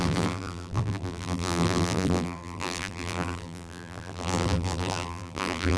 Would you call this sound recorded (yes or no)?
no